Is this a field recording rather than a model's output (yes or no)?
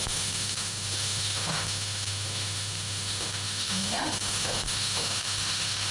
no